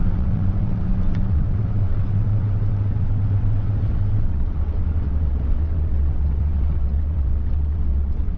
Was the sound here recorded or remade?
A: remade